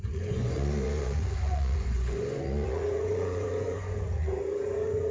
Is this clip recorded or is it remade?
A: remade